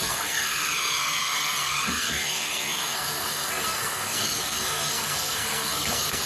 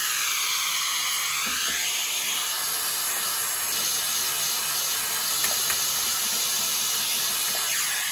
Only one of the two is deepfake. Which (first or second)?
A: first